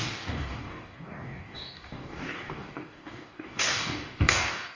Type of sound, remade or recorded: remade